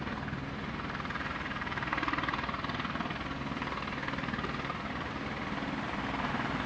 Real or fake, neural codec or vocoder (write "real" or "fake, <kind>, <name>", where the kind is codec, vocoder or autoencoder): real